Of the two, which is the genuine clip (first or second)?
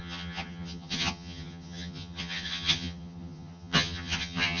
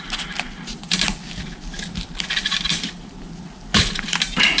second